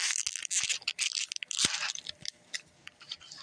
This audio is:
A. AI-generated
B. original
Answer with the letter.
B